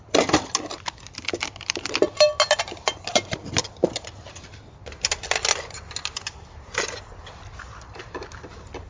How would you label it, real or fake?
real